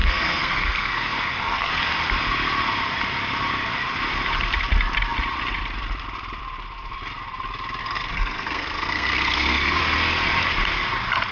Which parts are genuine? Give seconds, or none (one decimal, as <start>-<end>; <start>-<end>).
1.7-7.8; 9.8-11.3